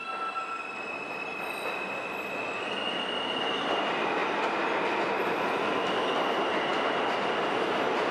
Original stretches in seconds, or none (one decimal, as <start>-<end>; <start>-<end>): 0.0-8.1